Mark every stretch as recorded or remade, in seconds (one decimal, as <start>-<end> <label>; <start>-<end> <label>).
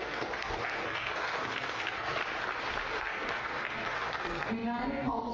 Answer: 0.0-2.2 remade; 2.2-2.9 recorded; 2.9-5.3 remade